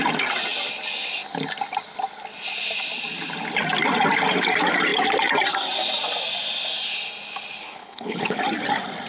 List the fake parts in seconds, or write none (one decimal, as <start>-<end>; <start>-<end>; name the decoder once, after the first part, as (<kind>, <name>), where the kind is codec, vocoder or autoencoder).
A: 7.6-8.4 (codec, HILCodec)